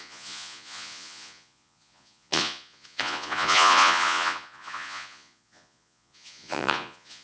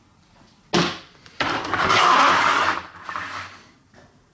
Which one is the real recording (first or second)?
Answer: second